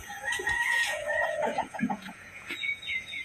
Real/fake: fake